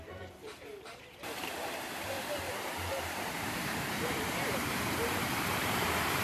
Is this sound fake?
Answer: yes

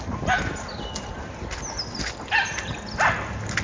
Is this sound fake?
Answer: no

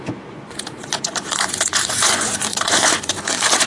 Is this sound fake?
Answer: yes